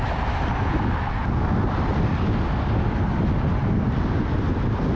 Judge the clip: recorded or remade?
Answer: recorded